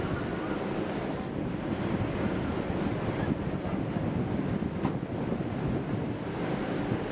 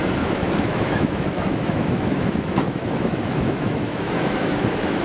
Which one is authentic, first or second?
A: first